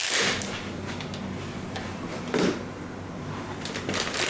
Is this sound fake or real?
real